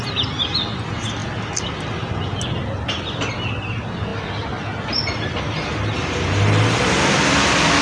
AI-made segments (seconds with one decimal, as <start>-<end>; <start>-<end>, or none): none